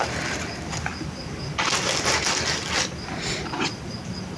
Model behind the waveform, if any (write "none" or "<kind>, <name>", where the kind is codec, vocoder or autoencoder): none